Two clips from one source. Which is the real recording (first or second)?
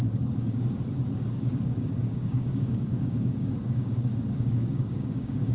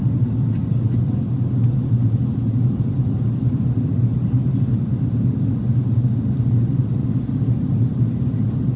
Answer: second